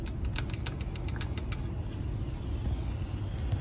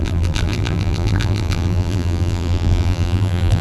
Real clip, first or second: first